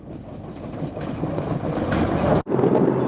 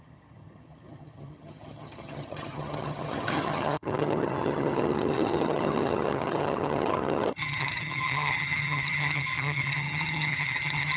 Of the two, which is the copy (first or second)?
second